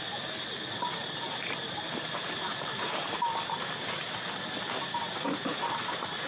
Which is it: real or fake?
real